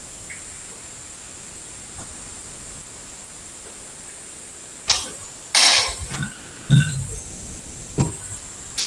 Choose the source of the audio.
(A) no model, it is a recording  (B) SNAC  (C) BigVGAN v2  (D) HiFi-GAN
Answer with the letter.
A